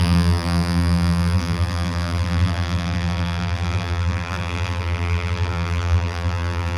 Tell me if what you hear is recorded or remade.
remade